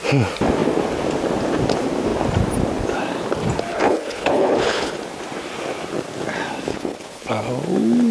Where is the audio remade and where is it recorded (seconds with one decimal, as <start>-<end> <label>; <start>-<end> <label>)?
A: 0.0-3.7 recorded; 3.7-4.9 remade; 4.9-6.7 recorded; 6.7-7.3 remade; 7.3-8.1 recorded